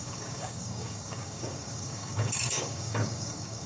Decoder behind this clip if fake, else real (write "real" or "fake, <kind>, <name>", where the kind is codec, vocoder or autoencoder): fake, codec, DAC